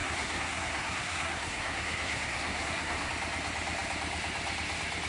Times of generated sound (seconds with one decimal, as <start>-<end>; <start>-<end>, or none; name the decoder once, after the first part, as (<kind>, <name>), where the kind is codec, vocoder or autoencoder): 0.0-3.1 (codec, SNAC)